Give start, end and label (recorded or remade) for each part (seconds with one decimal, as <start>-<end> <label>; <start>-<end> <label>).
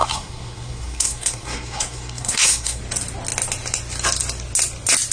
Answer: 0.0-2.8 remade; 2.8-5.1 recorded